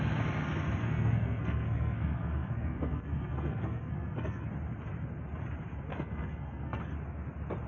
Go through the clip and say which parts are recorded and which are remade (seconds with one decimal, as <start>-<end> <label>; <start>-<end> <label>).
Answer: 0.0-0.8 recorded; 0.8-4.5 remade; 4.5-5.9 recorded; 5.9-6.8 remade; 6.8-7.7 recorded